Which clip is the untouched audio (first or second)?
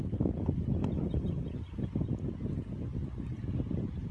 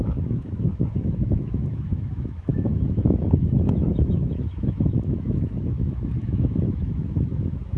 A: first